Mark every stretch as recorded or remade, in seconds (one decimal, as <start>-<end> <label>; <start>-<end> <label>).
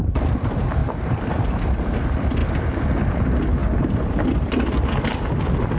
0.0-5.8 recorded